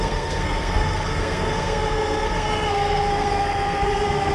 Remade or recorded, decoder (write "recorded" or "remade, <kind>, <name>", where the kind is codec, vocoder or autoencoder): remade, codec, SNAC